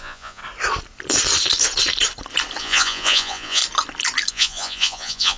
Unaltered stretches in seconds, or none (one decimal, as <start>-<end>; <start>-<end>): 0.4-2.6; 3.6-4.3

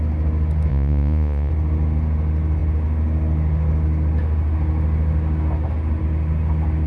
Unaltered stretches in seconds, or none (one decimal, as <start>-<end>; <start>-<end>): 0.0-0.7; 1.5-6.9

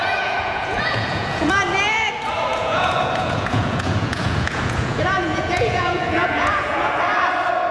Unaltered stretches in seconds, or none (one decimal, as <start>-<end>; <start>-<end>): 1.5-2.5; 6.9-7.7

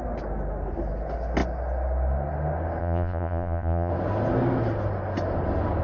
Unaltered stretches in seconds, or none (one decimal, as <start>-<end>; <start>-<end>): 0.0-2.8; 3.9-5.8

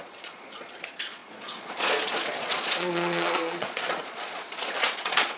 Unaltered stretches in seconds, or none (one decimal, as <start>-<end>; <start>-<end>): none